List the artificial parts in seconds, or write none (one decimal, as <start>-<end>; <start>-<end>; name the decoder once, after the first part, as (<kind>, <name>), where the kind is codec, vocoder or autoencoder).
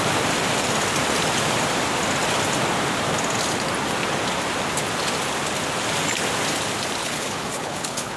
7.0-8.2 (codec, HILCodec)